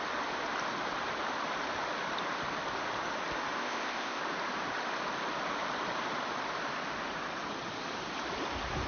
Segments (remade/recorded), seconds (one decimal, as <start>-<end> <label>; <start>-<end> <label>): 0.0-3.6 recorded; 3.6-4.2 remade; 4.2-8.9 recorded